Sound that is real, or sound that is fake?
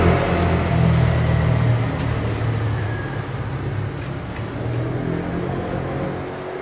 real